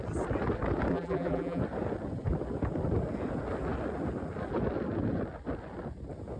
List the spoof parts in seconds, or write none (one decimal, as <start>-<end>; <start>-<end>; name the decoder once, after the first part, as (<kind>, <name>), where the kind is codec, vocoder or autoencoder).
0.9-1.6 (vocoder, BigVGAN v2)